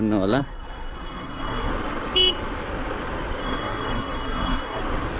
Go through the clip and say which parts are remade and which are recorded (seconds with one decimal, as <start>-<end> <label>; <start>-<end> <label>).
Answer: 0.0-0.4 recorded; 0.4-1.7 remade; 1.7-3.4 recorded; 3.4-4.8 remade; 4.8-5.2 recorded